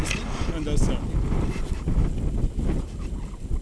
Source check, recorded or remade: recorded